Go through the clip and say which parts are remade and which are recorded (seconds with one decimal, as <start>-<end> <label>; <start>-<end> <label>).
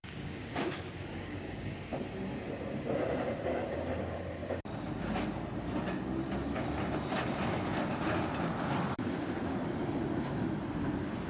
0.0-2.0 remade; 2.0-11.3 recorded